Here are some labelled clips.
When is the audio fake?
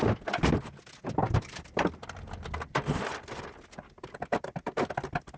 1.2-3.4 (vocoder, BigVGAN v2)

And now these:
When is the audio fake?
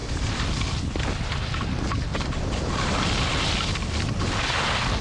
0.0-0.9 (vocoder, BigVGAN v2); 2.1-4.2